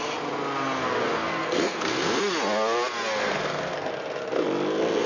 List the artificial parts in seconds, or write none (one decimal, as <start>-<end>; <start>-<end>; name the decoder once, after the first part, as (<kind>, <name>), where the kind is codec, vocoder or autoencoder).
1.4-2.2 (codec, SNAC); 3.2-3.9